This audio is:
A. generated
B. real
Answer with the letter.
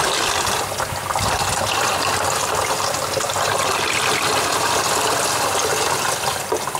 A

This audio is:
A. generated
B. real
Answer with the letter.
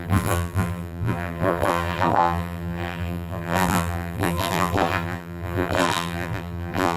A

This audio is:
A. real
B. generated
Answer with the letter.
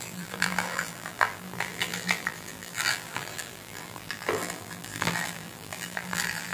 B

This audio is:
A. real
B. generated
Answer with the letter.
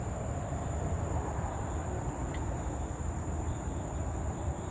B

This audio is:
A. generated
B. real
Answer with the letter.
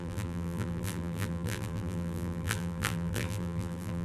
A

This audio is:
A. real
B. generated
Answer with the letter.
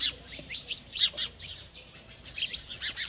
B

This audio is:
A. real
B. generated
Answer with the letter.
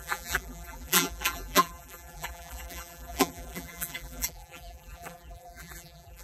B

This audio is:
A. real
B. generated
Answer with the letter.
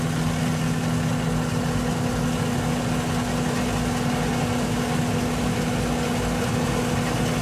A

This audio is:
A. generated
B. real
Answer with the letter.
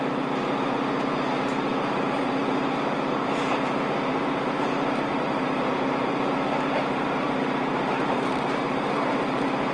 A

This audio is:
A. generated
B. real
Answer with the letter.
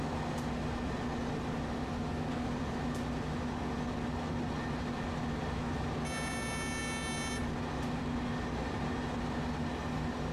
B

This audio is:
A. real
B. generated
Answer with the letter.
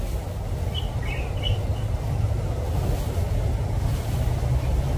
A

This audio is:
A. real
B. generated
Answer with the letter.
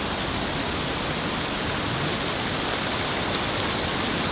A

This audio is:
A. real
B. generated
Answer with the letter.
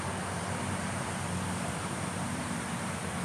B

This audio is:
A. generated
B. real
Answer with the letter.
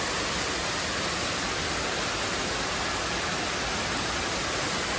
B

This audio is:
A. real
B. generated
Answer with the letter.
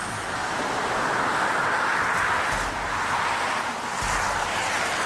A